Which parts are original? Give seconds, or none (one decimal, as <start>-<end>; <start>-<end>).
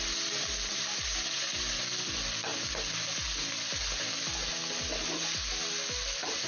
0.0-6.5